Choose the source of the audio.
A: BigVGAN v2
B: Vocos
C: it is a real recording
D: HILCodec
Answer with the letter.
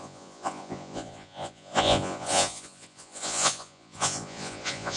B